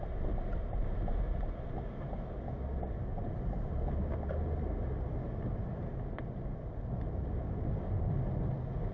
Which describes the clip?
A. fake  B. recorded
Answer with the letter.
B